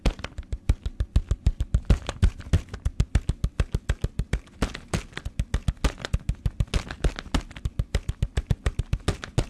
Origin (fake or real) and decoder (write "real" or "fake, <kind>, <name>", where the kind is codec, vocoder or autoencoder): real